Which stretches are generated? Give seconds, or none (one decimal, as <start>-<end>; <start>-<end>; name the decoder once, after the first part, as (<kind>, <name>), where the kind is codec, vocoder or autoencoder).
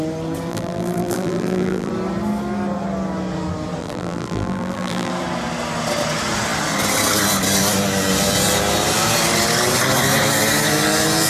0.5-1.9 (vocoder, BigVGAN v2); 3.8-5.1